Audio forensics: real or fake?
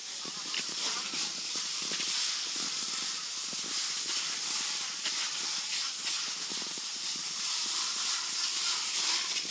real